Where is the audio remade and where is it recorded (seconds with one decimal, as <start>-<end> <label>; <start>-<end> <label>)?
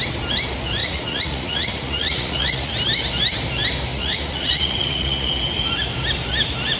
0.0-0.8 recorded; 0.8-2.7 remade; 2.7-3.9 recorded; 3.9-5.3 remade; 5.3-6.8 recorded